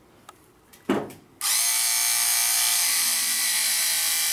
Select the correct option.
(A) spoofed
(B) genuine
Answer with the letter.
B